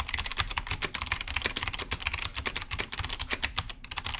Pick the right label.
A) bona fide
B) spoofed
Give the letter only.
B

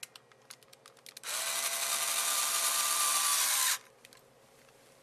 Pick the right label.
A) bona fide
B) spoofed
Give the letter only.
A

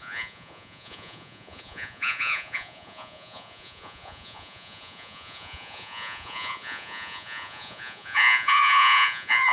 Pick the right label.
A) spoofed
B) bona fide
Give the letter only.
A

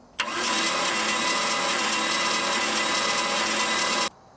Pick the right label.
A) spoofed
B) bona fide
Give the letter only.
B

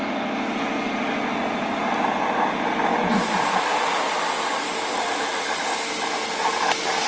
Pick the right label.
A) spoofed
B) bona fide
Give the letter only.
B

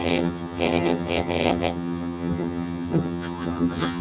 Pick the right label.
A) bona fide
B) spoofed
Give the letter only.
B